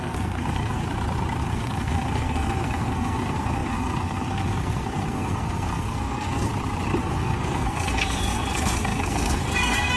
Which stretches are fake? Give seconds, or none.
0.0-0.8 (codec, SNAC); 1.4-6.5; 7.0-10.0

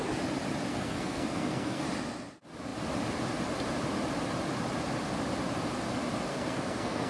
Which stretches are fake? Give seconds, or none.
0.7-1.8 (codec, SNAC); 6.3-7.1